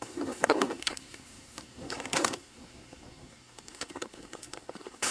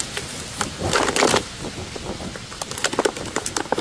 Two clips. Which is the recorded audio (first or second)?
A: second